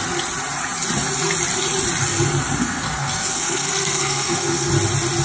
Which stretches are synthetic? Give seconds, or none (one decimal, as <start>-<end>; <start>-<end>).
2.6-4.7